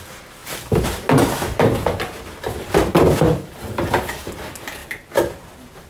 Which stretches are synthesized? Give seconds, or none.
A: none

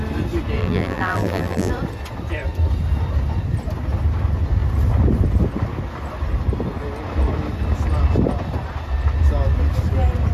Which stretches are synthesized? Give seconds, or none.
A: 0.6-1.7 (vocoder, BigVGAN v2)

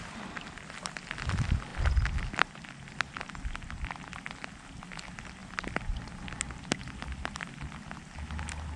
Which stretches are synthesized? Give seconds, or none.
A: none

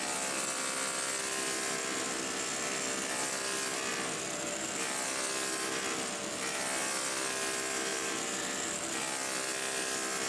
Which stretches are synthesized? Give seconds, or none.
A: 7.9-8.4 (vocoder, BigVGAN v2)

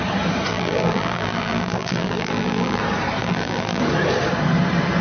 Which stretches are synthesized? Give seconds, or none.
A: 0.5-2.8 (vocoder, BigVGAN v2); 3.2-3.8

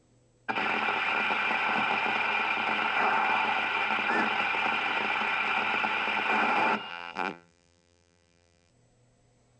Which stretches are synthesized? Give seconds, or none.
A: 6.9-8.7 (vocoder, BigVGAN v2)